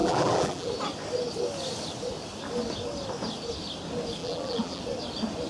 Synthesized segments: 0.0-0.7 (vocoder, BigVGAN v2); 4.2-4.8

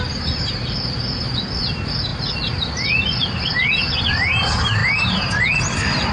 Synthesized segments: 4.8-5.4 (vocoder, BigVGAN v2)

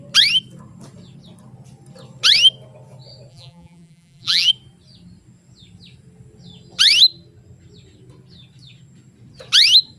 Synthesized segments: 3.3-4.5 (vocoder, BigVGAN v2)

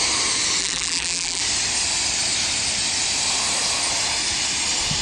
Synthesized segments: 0.6-1.4 (vocoder, BigVGAN v2)

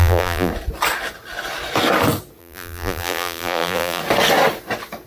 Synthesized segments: 0.0-0.5 (vocoder, BigVGAN v2); 2.4-4.0